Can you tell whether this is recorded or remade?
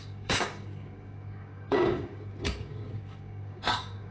remade